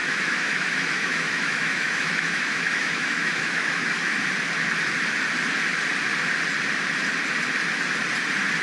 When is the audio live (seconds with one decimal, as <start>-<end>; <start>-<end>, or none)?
4.2-8.6